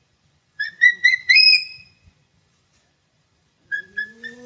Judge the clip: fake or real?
fake